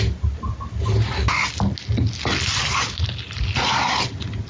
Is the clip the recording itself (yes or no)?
yes